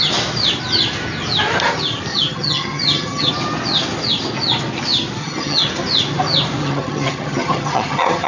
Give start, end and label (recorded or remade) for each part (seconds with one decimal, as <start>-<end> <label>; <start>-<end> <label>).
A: 0.0-2.1 recorded; 2.1-3.3 remade; 3.3-5.2 recorded; 5.2-5.7 remade; 5.7-6.6 recorded; 6.6-8.3 remade